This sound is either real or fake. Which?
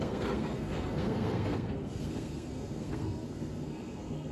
fake